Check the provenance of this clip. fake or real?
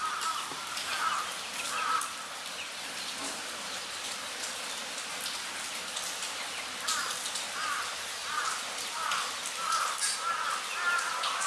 real